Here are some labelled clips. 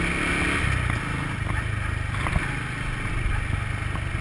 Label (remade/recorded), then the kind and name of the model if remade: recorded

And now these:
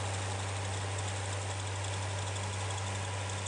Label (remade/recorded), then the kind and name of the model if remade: recorded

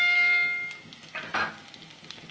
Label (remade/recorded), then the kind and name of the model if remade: recorded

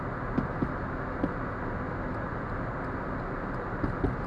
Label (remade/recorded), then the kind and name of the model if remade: recorded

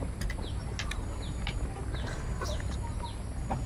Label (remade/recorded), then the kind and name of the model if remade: recorded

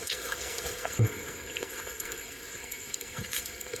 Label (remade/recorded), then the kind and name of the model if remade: remade, codec, SNAC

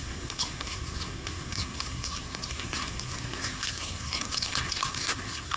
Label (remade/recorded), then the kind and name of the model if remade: remade, codec, SNAC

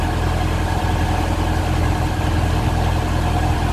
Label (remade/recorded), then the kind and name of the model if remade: recorded